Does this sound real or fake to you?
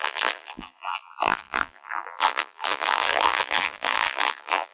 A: fake